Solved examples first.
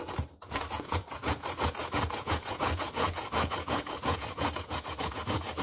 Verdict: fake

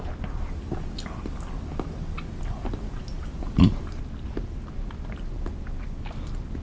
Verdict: real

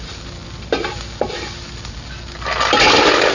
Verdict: real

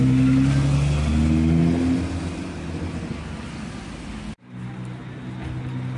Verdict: real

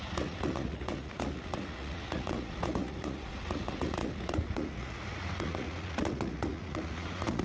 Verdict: fake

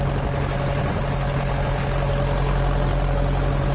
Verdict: real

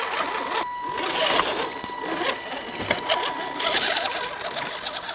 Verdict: real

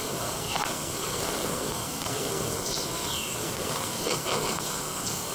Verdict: fake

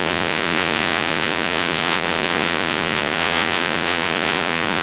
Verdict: fake